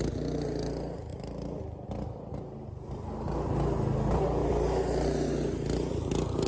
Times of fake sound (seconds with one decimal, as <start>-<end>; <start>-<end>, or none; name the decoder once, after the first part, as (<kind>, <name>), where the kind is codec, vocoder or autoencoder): 1.1-3.0 (vocoder, BigVGAN v2)